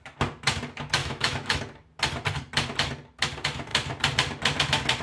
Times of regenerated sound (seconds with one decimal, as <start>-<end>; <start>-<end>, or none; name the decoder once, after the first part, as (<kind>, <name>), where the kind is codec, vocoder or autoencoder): 1.0-1.6 (autoencoder, DAC-VAE)